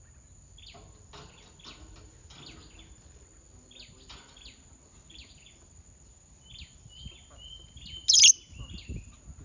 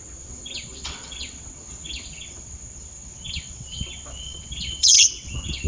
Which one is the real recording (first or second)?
first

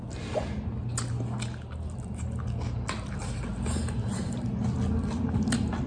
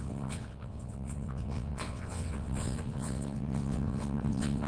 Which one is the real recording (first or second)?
first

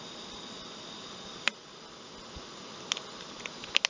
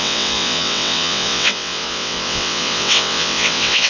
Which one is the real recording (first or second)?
first